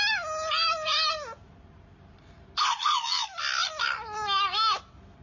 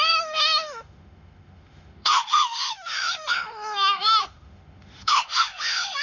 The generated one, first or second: second